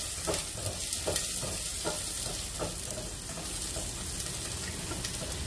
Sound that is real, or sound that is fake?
real